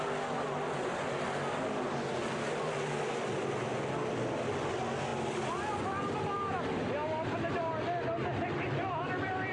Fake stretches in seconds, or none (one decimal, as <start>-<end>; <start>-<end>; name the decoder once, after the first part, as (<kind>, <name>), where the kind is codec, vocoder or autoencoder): none